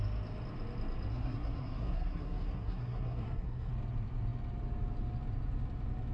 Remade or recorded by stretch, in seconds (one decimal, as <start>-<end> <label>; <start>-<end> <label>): 0.0-1.1 recorded; 1.1-3.7 remade; 3.7-6.1 recorded